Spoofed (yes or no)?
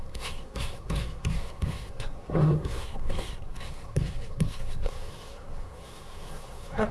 yes